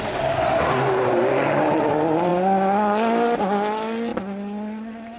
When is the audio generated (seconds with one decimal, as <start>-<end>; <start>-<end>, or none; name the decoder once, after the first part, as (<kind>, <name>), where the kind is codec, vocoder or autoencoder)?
none